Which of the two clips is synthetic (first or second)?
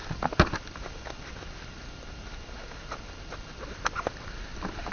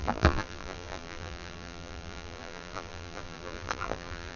second